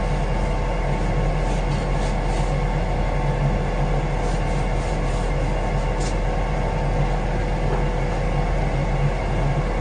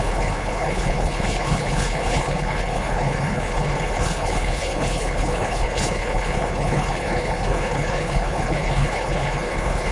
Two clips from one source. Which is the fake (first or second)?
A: second